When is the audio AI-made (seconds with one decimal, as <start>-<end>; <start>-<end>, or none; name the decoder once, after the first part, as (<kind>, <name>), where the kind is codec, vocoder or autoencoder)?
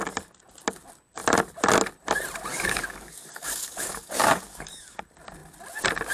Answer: 2.5-5.0 (codec, DAC)